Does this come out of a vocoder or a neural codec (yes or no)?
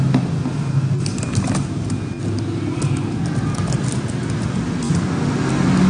no